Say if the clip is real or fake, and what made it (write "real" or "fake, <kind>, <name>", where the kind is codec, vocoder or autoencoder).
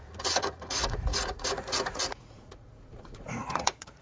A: fake, vocoder, Vocos